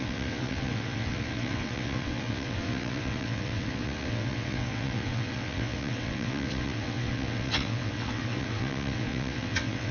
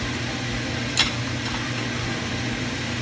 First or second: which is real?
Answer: second